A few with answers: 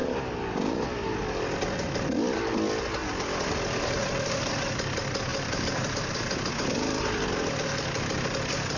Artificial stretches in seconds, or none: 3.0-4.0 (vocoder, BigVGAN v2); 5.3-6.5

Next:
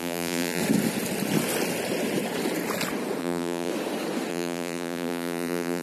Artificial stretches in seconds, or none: 0.0-0.6 (vocoder, BigVGAN v2); 3.2-3.7; 4.3-5.8

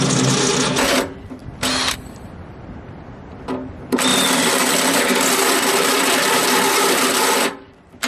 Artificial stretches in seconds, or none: 4.1-8.1 (vocoder, BigVGAN v2)

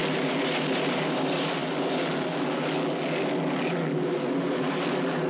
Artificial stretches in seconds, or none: none

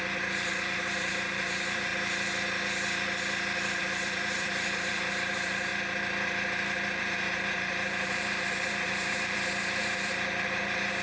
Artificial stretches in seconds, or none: 0.0-1.9 (vocoder, BigVGAN v2); 3.8-5.7; 7.0-11.0

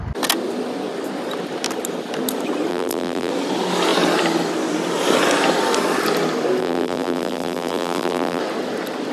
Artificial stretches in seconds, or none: 2.7-3.3 (vocoder, BigVGAN v2); 6.6-8.4

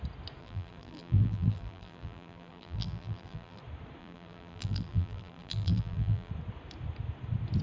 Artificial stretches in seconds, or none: 0.4-3.6 (vocoder, BigVGAN v2); 4.0-6.3